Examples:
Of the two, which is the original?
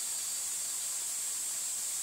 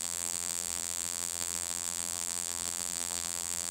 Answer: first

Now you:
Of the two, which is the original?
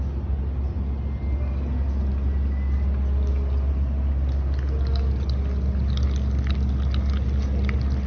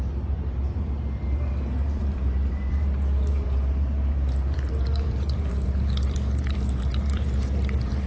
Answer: first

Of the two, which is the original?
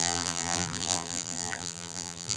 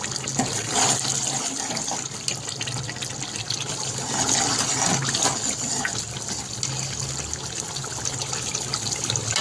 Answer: second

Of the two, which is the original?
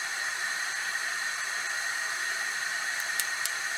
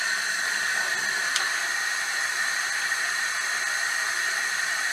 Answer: second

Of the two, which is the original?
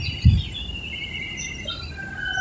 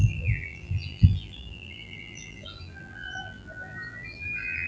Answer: first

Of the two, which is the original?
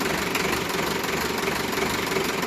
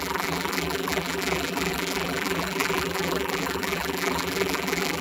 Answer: first